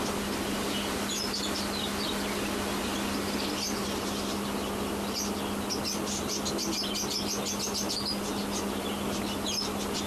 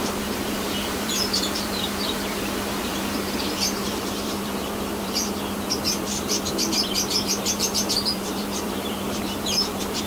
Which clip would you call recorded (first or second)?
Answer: first